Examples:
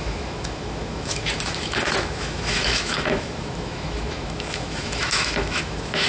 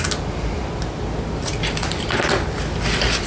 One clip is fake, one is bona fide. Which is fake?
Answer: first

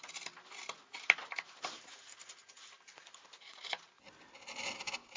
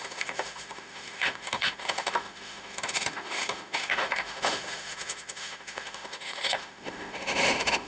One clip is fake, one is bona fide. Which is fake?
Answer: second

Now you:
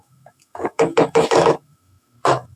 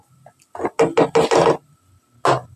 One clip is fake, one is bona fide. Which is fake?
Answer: first